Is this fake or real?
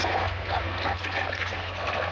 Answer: fake